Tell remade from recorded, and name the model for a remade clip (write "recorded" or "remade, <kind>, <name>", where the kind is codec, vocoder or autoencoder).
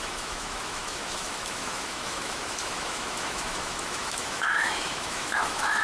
remade, autoencoder, DAC-VAE